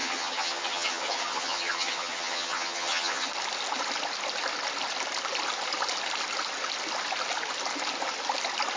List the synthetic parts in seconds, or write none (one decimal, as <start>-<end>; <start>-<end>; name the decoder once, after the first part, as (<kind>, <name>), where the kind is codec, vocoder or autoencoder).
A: 0.0-3.3 (vocoder, HiFi-GAN)